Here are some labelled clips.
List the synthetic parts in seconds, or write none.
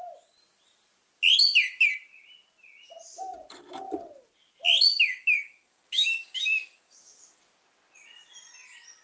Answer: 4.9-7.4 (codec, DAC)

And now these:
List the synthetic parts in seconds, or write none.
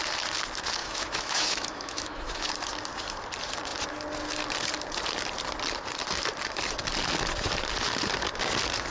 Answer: 0.8-2.5 (autoencoder, DAC-VAE)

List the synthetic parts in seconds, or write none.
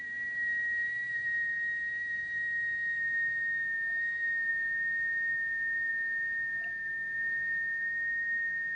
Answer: none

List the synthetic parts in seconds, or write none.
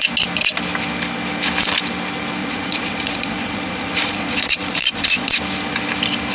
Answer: 2.4-5.3 (vocoder, Vocos)